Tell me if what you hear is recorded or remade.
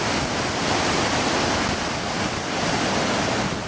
recorded